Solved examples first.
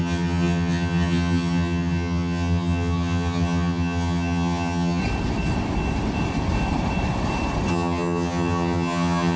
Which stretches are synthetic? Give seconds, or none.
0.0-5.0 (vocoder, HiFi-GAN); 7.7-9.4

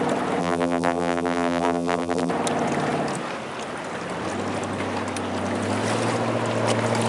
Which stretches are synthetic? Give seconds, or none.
0.4-2.3 (vocoder, BigVGAN v2)

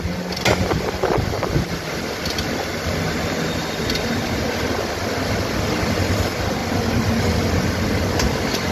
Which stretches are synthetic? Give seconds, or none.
6.6-7.7 (vocoder, BigVGAN v2)

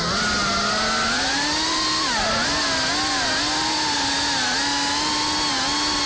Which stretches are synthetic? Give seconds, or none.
none

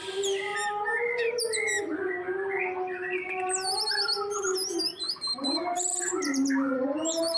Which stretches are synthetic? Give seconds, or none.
0.0-0.5 (vocoder, BigVGAN v2); 4.8-7.4